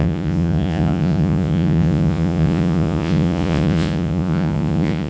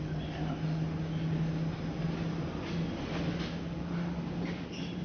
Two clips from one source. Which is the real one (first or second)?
second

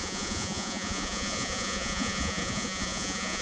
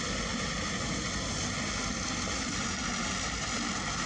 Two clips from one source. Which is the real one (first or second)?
second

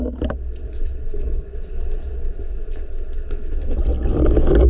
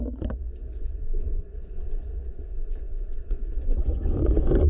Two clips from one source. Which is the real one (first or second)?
first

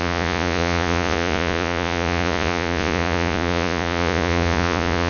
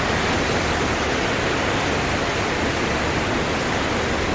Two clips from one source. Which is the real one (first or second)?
second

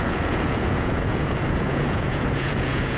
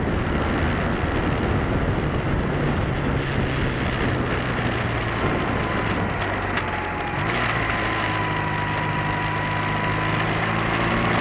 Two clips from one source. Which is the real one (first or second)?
second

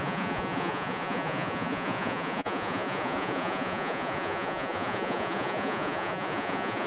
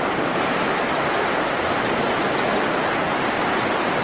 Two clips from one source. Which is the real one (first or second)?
second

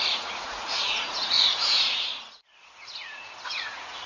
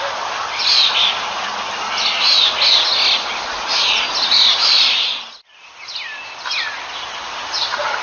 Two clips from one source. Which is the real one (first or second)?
second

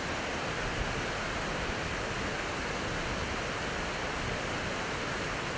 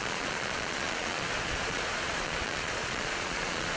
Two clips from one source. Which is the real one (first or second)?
first